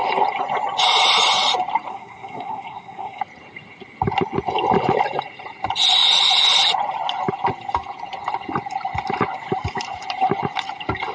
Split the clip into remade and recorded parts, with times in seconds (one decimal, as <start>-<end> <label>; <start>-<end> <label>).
0.0-1.9 recorded; 1.9-3.2 remade; 3.2-11.1 recorded